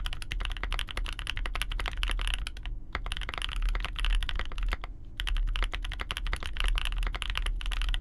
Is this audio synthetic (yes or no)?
no